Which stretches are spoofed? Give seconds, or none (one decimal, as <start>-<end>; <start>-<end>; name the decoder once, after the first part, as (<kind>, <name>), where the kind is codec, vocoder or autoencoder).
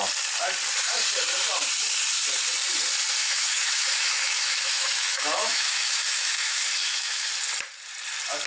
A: 3.2-7.3 (autoencoder, DAC-VAE)